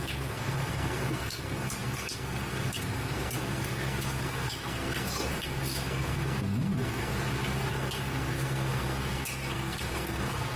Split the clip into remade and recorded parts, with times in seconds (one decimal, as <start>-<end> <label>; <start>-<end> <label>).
0.0-7.1 remade; 7.1-7.7 recorded; 7.7-10.6 remade